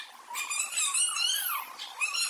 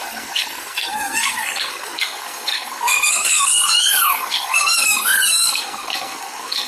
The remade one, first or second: second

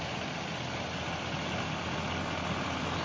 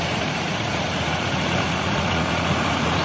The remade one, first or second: second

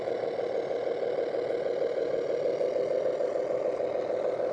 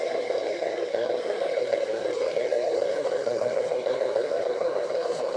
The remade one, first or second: second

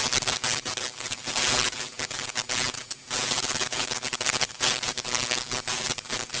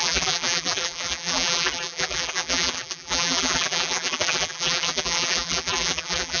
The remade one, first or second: second